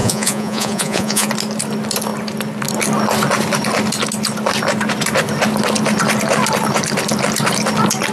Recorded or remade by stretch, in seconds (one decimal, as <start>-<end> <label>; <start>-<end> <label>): 0.0-1.3 remade; 1.3-8.1 recorded

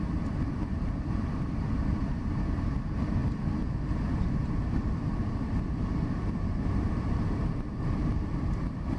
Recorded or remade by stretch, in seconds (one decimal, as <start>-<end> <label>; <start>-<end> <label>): 0.0-3.2 remade; 3.2-3.9 recorded; 3.9-9.0 remade

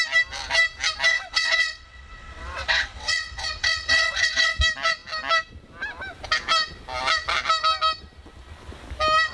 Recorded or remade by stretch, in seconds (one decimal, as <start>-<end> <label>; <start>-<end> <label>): 0.0-1.1 recorded; 1.1-4.6 remade; 4.6-9.3 recorded